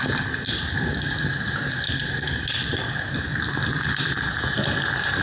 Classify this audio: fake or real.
real